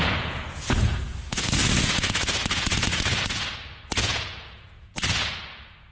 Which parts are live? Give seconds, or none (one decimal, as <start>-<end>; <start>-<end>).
none